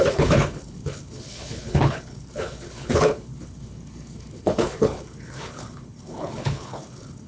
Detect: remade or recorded remade